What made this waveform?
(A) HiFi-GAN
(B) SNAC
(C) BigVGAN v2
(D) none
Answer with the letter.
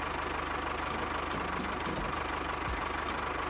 D